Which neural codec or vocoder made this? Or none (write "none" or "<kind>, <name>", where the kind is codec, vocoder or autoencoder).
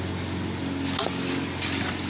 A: none